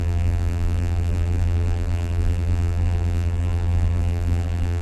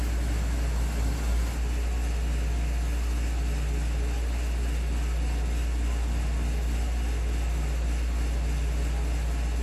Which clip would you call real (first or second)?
second